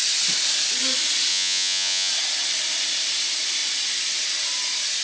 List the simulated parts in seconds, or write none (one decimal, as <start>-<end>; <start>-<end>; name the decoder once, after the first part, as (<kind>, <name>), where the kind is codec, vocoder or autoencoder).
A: 1.3-2.1 (vocoder, Vocos)